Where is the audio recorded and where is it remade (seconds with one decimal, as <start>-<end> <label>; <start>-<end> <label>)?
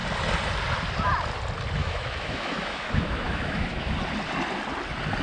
0.0-1.8 recorded; 1.8-3.9 remade; 3.9-5.2 recorded